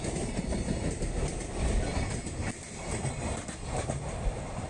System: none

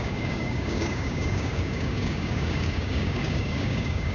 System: codec, DAC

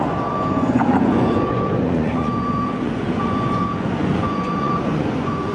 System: vocoder, Vocos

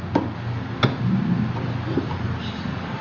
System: none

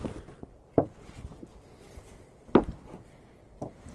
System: none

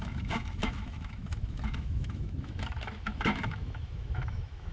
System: autoencoder, DAC-VAE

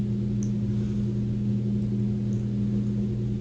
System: none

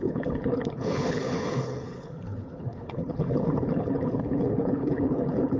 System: codec, HILCodec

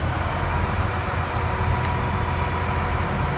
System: none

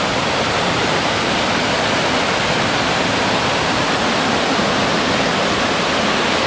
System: none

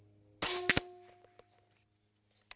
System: none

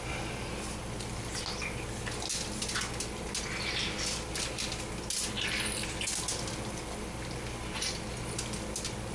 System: none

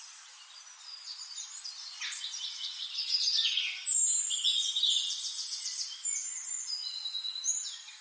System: none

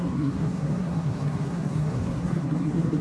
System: codec, SNAC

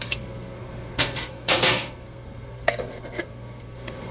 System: codec, SNAC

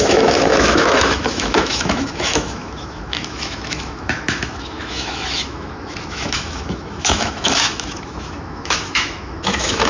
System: autoencoder, DAC-VAE